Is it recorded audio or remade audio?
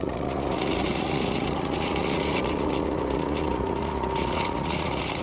remade